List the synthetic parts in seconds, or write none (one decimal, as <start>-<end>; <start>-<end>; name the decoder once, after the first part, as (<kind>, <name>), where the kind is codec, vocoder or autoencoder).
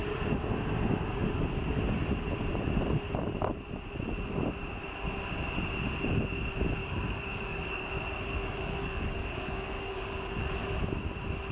6.8-7.9 (codec, DAC); 8.4-10.5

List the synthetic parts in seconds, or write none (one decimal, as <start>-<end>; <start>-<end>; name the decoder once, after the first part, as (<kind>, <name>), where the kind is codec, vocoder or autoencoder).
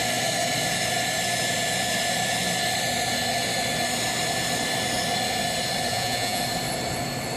5.9-6.4 (vocoder, Vocos)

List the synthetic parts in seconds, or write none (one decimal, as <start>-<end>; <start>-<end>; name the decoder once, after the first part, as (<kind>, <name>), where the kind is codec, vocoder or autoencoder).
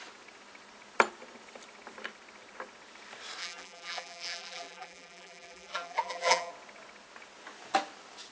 3.4-6.5 (vocoder, BigVGAN v2)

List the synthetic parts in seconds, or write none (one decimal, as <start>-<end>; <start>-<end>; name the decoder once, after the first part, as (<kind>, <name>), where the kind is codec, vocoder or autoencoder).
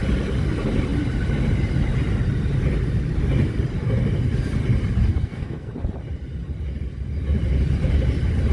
5.1-5.7 (codec, SNAC)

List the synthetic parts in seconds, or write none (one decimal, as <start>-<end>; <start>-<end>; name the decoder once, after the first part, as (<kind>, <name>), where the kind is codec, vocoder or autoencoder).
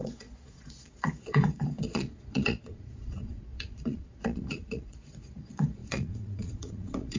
0.0-7.2 (vocoder, Vocos)